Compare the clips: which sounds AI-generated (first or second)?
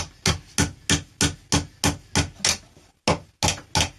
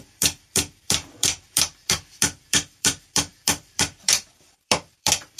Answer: second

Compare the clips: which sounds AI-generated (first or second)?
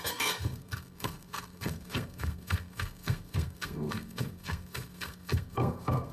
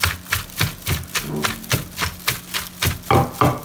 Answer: first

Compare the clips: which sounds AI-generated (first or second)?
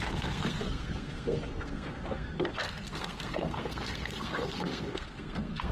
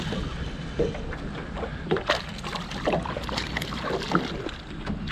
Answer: first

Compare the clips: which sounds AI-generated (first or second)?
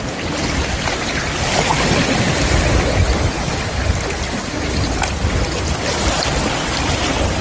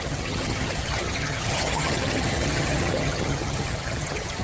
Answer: second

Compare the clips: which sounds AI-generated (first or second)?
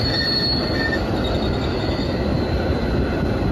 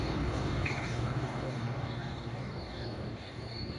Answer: second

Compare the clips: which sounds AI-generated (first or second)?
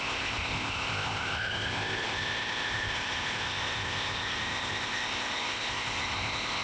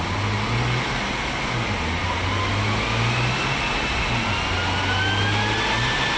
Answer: first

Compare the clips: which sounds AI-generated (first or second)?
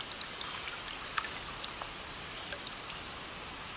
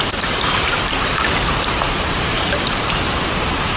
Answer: second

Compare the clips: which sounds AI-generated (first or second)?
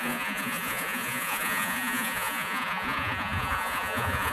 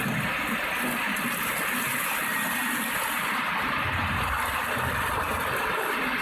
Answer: first